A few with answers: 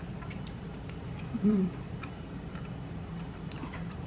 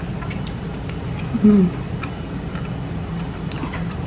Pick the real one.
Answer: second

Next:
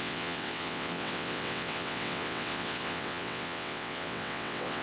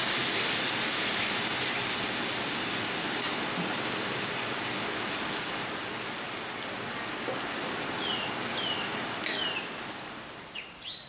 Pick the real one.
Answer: second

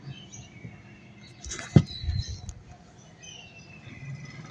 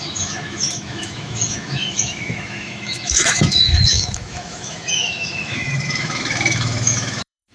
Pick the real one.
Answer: first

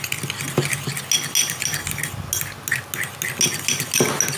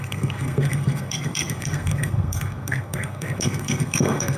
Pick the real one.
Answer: first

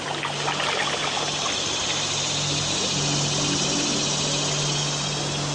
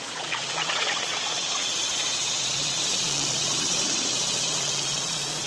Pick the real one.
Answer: first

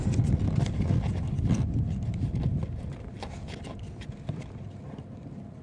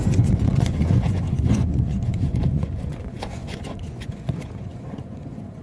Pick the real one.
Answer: first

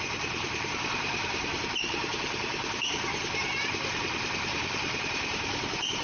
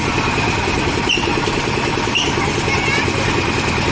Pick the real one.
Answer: second